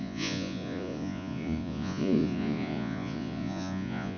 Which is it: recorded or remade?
remade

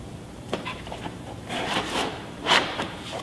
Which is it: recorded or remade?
remade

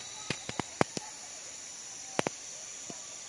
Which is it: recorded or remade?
recorded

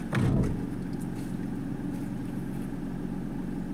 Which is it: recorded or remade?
recorded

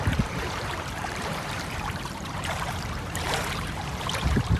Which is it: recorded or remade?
remade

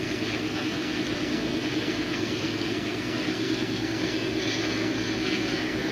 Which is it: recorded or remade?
remade